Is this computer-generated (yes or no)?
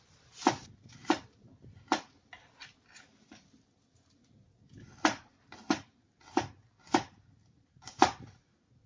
no